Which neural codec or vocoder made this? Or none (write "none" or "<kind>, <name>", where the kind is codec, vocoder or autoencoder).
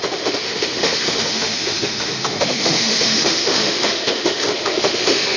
autoencoder, DAC-VAE